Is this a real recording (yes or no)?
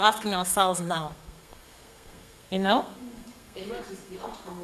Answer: no